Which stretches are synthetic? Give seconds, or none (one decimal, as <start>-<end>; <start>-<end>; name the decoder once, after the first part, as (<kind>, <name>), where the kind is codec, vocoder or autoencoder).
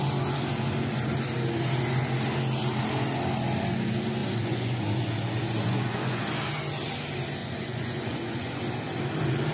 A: 4.2-6.2 (vocoder, Vocos); 7.4-8.6